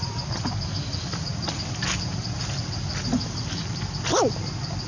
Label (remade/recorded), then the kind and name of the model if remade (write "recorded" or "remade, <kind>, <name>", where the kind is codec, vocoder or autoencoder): recorded